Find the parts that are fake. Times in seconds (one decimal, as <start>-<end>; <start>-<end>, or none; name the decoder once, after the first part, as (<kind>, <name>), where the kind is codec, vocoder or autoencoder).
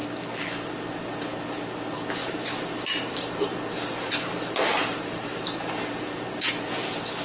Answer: 2.2-6.5 (vocoder, BigVGAN v2)